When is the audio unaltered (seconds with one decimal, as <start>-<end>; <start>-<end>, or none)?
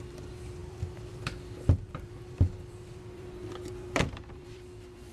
none